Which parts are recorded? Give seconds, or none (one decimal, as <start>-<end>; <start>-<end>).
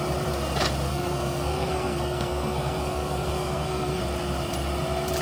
0.0-0.9; 4.0-5.2